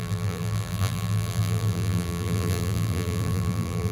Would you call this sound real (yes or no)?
no